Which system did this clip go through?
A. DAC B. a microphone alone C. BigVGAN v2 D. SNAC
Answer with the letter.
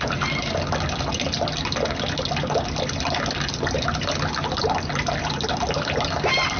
B